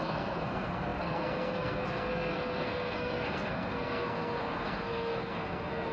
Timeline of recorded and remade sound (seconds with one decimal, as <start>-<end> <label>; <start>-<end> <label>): 0.0-5.9 remade